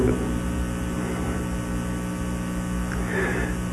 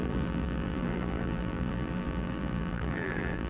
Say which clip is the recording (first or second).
first